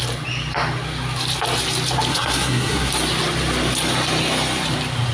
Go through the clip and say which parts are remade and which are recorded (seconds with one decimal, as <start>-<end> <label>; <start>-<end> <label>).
0.0-2.1 recorded; 2.1-2.9 remade; 2.9-5.1 recorded

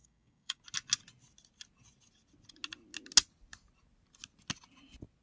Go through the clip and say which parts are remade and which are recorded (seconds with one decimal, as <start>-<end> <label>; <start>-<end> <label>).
0.0-0.6 remade; 0.6-5.2 recorded